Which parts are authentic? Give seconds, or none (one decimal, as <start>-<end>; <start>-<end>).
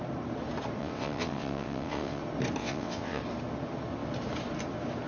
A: 0.0-0.8; 2.2-2.6; 3.2-5.1